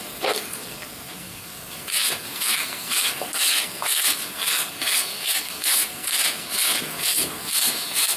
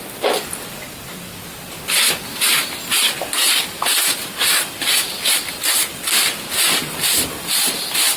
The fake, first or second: first